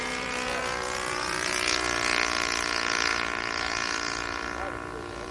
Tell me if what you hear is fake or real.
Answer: fake